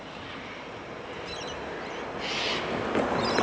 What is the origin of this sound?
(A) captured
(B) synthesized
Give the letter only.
A